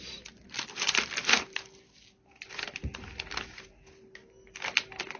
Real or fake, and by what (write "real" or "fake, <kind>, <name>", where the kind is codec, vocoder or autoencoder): real